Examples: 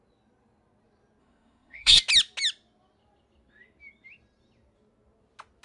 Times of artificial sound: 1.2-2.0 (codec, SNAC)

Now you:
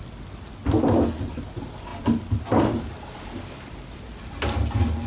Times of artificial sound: none

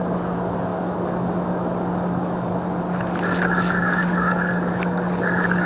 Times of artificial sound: 0.0-5.7 (codec, DAC)

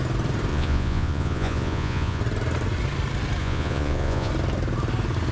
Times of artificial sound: 0.5-2.2 (vocoder, Vocos); 3.4-4.3

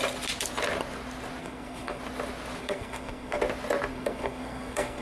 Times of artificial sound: 1.4-2.0 (codec, SNAC); 2.6-3.4; 3.9-5.0

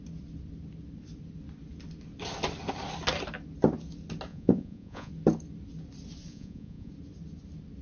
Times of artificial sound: 4.3-5.1 (vocoder, Vocos); 6.3-6.9